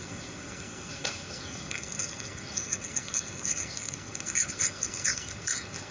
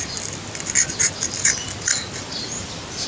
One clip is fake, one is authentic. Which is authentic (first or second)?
second